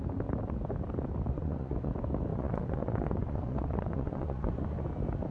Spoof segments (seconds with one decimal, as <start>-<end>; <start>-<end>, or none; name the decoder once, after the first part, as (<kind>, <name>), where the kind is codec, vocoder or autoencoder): 1.3-1.9 (vocoder, Vocos); 2.3-4.8